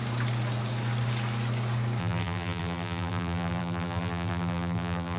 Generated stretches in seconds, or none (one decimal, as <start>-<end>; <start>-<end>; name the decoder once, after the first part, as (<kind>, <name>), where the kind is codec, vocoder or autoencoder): 2.0-5.2 (vocoder, BigVGAN v2)